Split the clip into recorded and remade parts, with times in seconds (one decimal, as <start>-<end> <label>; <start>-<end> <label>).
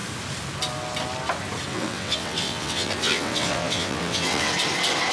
0.0-1.7 recorded; 1.7-4.5 remade; 4.5-5.1 recorded